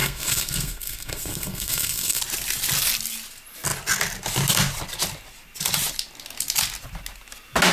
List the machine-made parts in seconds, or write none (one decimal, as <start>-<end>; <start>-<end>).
0.0-2.2